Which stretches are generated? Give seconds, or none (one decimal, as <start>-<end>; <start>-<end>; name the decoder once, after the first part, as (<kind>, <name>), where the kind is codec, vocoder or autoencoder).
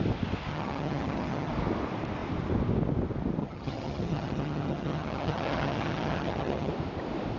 0.5-1.5 (vocoder, HiFi-GAN); 3.4-6.7